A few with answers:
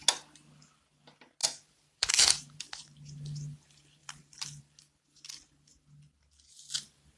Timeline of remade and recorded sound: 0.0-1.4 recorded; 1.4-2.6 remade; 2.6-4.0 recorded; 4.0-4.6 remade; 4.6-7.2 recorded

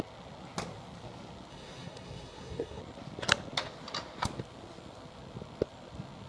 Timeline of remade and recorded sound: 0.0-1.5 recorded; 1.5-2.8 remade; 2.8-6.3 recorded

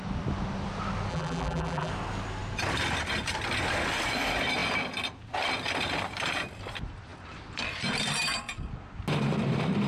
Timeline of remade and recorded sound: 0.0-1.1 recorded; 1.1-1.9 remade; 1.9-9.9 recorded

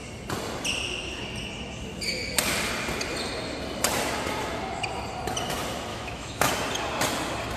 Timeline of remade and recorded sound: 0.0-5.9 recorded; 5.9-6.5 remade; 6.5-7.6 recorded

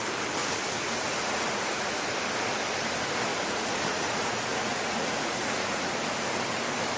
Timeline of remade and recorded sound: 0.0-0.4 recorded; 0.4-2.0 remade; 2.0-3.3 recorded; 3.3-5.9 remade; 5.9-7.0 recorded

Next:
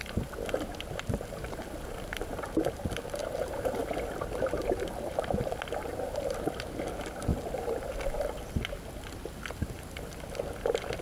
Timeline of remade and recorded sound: 0.0-3.2 recorded; 3.2-3.8 remade; 3.8-11.0 recorded

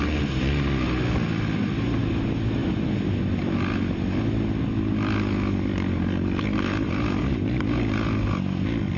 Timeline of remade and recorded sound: 0.0-9.0 recorded

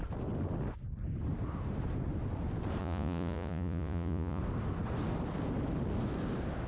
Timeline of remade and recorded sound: 0.0-2.8 recorded; 2.8-4.4 remade; 4.4-6.7 recorded